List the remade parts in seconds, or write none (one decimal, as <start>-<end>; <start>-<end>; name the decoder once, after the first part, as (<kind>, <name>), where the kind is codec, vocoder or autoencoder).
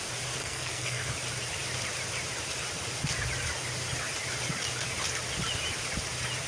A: 0.4-1.1 (codec, SNAC)